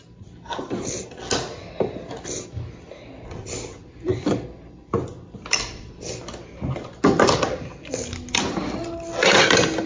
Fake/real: real